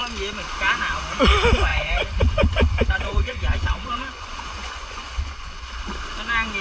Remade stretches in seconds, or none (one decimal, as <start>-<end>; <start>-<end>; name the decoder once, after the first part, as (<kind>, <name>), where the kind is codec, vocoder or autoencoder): 1.7-5.7 (vocoder, Vocos)